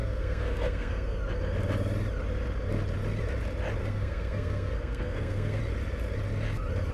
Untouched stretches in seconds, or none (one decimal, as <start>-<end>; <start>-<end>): 1.2-3.8; 5.6-6.9